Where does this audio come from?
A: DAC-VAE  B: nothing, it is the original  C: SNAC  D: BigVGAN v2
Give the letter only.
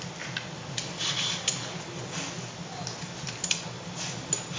B